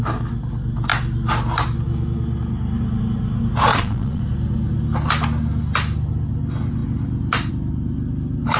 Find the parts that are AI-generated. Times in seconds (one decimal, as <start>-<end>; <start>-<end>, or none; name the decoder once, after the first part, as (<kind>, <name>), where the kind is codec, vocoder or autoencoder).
3.7-4.2 (vocoder, Vocos)

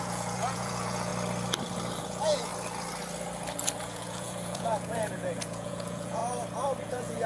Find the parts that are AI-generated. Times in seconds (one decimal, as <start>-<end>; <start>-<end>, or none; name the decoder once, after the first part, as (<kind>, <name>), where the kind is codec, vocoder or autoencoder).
0.0-1.1 (vocoder, Vocos); 2.0-2.5; 3.8-6.2; 6.8-7.3